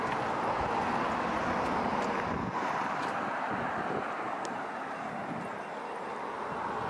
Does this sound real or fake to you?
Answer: real